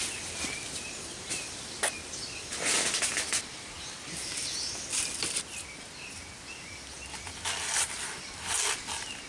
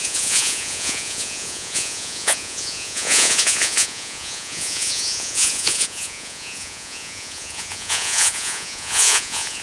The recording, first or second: first